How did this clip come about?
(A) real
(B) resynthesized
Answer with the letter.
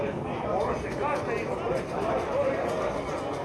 A